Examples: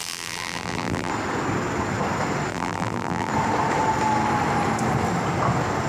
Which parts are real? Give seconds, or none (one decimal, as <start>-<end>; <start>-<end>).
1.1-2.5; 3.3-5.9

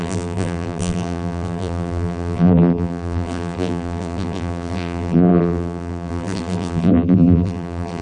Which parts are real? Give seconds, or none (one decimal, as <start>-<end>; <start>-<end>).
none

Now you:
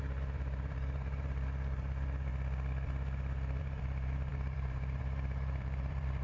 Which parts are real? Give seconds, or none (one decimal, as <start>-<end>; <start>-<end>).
2.3-3.6